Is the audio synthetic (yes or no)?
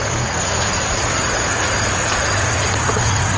yes